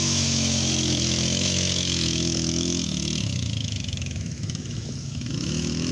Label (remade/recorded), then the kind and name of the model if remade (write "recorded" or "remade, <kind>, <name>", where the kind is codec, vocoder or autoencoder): remade, autoencoder, DAC-VAE